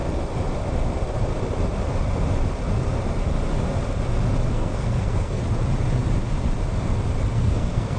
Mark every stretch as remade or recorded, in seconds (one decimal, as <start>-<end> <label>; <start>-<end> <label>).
0.0-4.5 recorded; 4.5-5.4 remade; 5.4-7.3 recorded; 7.3-8.0 remade